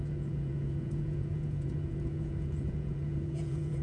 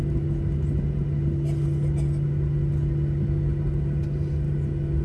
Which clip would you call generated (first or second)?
first